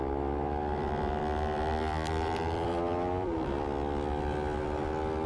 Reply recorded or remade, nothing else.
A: remade